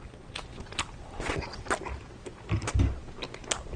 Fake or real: real